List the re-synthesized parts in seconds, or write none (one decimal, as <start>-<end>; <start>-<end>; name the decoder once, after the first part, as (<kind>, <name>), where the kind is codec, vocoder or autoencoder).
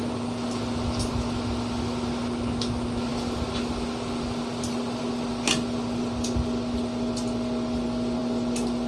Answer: none